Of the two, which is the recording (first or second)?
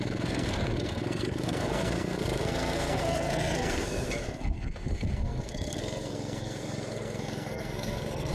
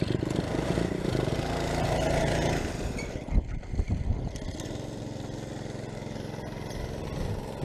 second